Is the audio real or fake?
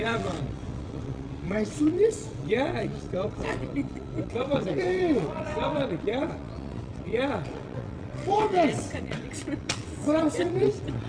fake